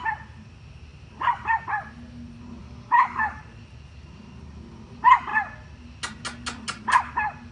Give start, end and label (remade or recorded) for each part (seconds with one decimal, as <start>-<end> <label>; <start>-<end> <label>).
0.0-2.6 recorded; 2.6-3.4 remade; 3.4-7.5 recorded